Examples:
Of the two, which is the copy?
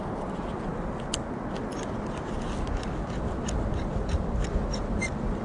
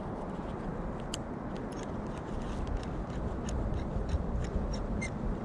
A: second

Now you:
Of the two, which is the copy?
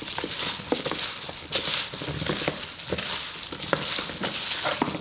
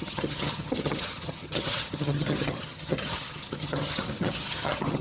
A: second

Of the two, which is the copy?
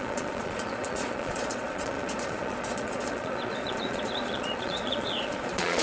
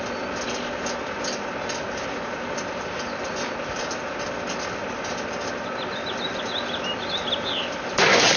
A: first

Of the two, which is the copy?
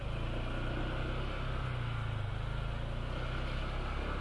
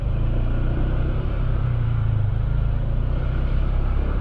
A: second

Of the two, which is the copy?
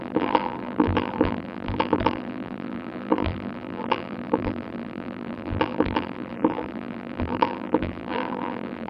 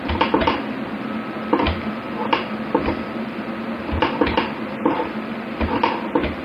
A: first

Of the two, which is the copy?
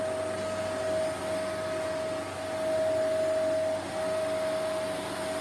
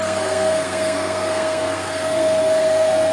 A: second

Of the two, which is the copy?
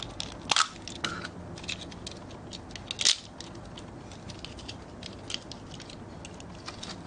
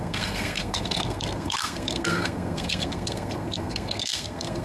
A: second